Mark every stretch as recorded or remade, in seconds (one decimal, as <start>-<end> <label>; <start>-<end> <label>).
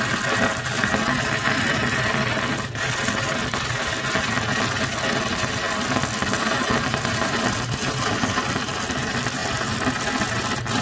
0.0-3.5 remade; 3.5-8.1 recorded; 8.1-9.4 remade; 9.4-10.8 recorded